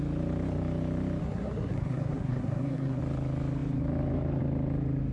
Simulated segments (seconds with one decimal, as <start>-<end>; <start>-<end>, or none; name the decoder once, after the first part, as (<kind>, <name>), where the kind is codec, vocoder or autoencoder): 1.2-3.0 (codec, SNAC)